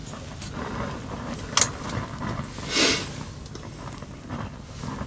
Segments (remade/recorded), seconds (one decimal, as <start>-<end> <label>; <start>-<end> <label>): 0.0-5.1 recorded

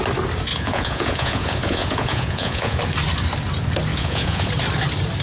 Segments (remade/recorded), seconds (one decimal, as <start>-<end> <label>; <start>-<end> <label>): 0.0-0.5 recorded; 0.5-2.8 remade; 2.8-3.9 recorded; 3.9-4.5 remade; 4.5-5.2 recorded

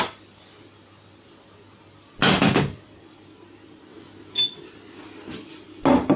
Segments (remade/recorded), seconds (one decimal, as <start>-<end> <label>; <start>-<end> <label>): 0.0-2.2 recorded; 2.2-2.9 remade; 2.9-6.2 recorded

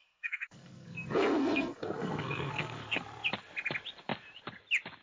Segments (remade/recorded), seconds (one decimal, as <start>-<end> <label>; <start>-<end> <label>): 0.0-3.0 remade; 3.0-5.0 recorded

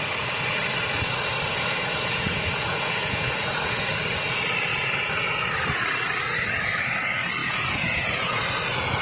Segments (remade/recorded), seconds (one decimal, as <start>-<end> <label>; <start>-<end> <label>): 0.0-1.5 recorded; 1.5-3.9 remade; 3.9-4.7 recorded; 4.7-5.3 remade; 5.3-7.4 recorded; 7.4-8.5 remade; 8.5-9.0 recorded

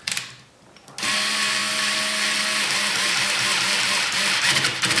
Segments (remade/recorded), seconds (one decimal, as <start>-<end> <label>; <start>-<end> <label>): 0.0-5.0 recorded